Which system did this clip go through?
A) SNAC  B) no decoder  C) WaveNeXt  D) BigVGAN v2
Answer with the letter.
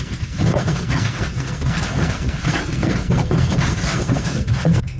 A